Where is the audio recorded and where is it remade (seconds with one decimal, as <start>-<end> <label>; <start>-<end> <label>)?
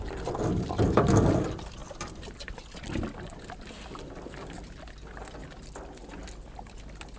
0.0-7.2 recorded